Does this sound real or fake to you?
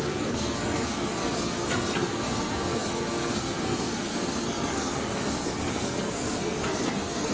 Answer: fake